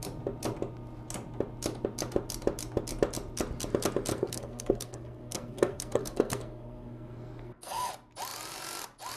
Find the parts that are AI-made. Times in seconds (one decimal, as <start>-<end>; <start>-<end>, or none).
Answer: 4.1-7.9

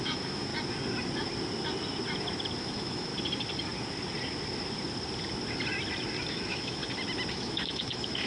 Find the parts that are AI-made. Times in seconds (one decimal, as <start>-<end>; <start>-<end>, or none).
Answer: 0.0-0.5; 2.6-3.1; 6.3-6.8; 7.3-8.3

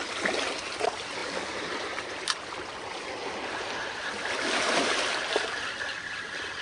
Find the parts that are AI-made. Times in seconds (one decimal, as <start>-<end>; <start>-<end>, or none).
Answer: none